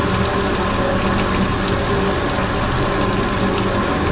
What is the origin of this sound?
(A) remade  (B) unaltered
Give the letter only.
B